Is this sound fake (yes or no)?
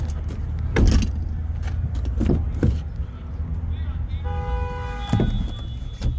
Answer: no